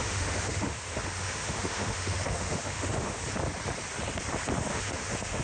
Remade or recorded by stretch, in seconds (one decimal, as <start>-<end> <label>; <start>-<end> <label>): 0.0-3.2 remade; 3.2-4.7 recorded; 4.7-5.4 remade